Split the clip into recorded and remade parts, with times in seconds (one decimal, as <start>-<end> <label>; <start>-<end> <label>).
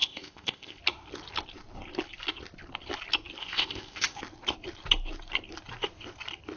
0.0-0.8 remade; 0.8-3.4 recorded; 3.4-4.2 remade; 4.2-6.6 recorded